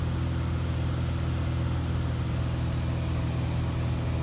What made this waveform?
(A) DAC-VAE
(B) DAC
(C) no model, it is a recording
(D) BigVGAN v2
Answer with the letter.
C